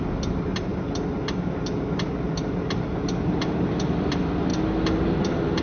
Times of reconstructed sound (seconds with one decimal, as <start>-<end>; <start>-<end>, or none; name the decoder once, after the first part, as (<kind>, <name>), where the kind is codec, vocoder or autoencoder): none